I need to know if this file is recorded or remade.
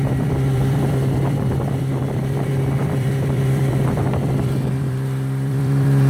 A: remade